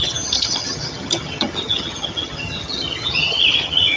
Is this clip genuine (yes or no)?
no